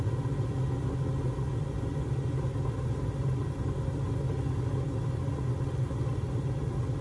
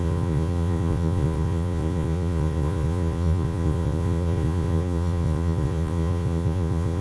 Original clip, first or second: first